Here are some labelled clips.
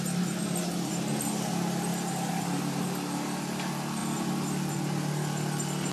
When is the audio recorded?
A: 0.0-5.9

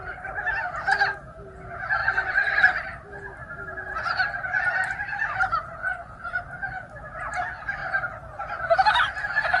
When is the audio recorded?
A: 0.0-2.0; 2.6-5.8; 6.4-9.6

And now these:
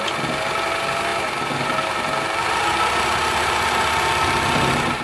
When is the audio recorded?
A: 0.0-5.0

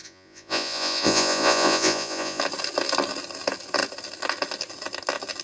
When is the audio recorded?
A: 2.4-5.4

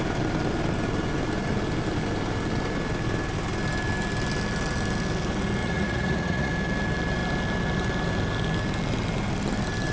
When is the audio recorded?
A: 0.0-5.6; 6.5-9.9